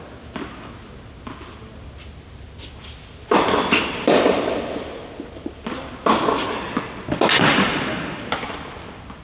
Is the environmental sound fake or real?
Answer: real